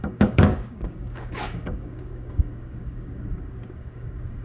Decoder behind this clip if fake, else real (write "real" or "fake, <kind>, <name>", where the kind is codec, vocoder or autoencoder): fake, codec, DAC